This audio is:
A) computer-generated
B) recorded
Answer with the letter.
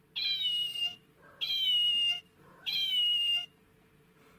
B